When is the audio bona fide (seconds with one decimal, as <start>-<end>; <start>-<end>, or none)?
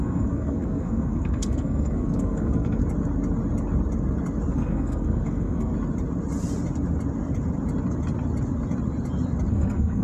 2.8-4.5; 5.7-9.5